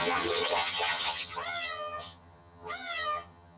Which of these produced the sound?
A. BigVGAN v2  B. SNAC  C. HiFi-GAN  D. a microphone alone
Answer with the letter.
C